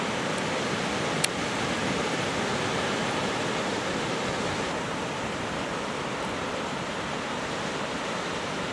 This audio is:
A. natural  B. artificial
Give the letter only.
B